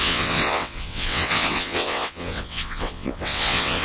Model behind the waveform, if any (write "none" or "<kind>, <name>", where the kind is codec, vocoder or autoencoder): vocoder, WaveNeXt